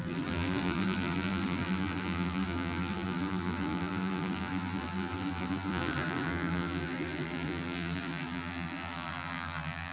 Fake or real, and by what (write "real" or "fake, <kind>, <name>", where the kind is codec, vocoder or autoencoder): fake, vocoder, BigVGAN v2